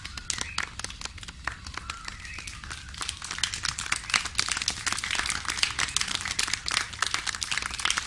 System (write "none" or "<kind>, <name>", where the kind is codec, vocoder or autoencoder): none